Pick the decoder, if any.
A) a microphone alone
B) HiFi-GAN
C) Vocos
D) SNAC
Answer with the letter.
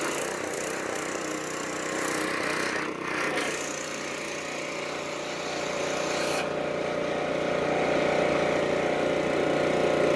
A